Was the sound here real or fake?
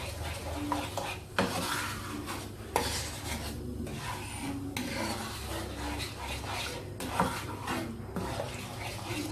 real